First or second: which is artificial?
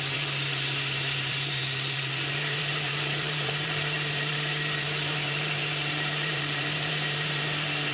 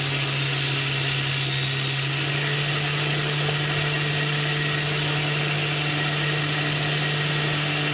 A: first